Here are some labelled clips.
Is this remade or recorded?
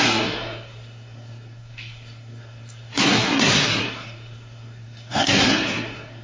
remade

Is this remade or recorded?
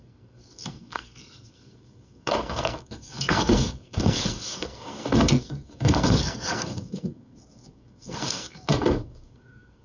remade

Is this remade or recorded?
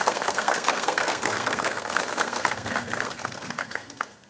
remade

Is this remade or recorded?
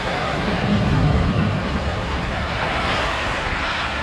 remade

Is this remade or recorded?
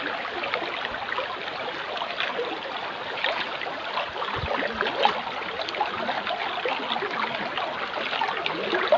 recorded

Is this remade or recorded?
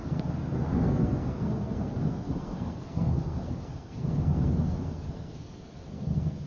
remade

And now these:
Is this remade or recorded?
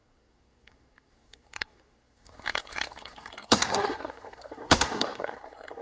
remade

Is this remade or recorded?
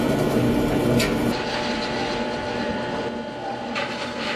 recorded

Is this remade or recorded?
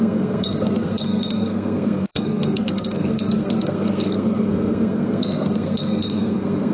remade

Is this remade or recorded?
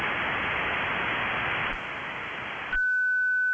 recorded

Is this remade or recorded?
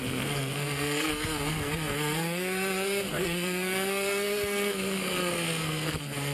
remade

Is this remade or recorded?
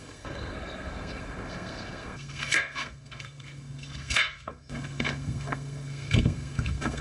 remade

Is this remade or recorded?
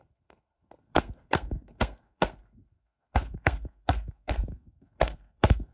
remade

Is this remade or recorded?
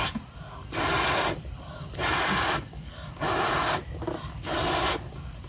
recorded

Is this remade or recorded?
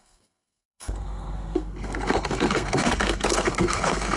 remade